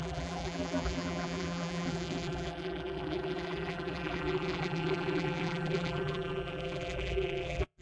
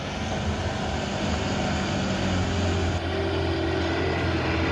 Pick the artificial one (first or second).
first